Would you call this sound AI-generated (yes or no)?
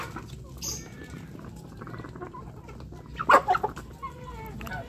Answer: no